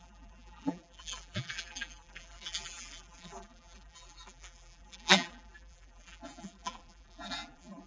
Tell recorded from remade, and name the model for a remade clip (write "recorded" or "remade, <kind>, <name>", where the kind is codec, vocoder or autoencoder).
remade, vocoder, BigVGAN v2